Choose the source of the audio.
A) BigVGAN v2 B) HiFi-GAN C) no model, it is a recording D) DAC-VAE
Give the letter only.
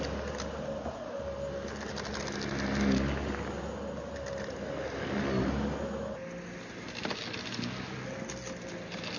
C